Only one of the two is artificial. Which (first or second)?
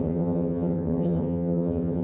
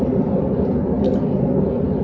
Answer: first